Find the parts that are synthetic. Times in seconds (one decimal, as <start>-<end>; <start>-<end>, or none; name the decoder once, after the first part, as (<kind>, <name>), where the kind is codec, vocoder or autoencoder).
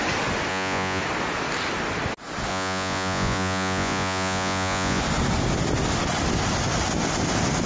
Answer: 0.5-1.0 (vocoder, Vocos); 2.5-5.0